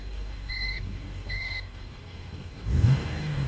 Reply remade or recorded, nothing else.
remade